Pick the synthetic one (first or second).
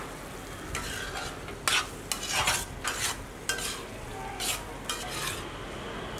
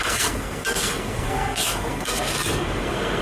second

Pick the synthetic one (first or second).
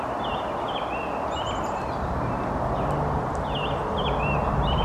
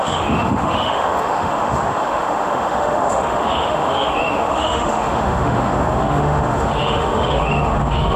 second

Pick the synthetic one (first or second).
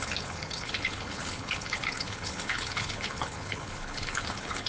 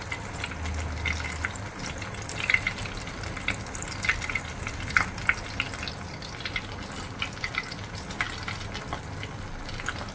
first